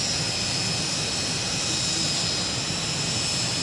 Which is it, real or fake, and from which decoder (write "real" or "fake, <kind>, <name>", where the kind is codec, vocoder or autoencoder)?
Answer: real